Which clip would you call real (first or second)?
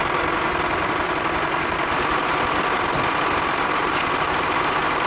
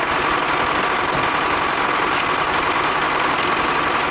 second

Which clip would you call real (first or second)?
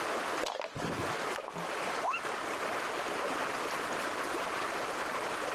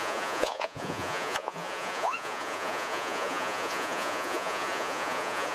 first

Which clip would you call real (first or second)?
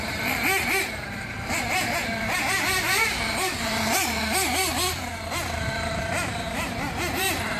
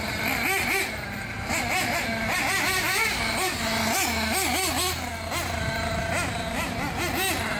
second